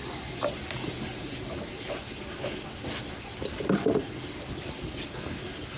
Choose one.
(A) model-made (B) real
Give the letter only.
B